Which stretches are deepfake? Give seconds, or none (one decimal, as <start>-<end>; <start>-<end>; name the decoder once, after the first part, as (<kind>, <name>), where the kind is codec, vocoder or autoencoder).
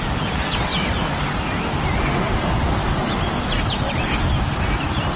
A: none